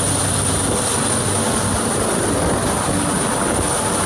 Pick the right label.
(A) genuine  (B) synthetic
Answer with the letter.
A